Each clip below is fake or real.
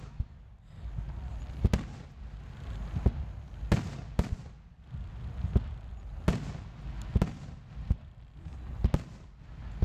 real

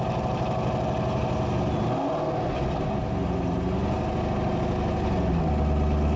real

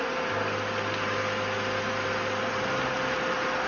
real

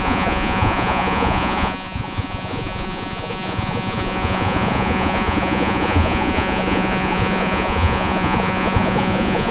fake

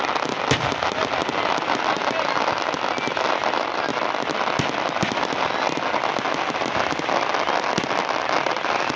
real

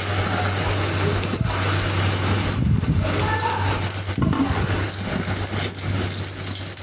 real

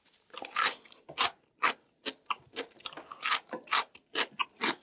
real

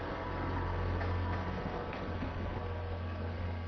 fake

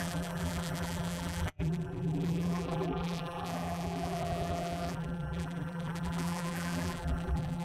fake